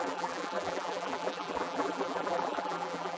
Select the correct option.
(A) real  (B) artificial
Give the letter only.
B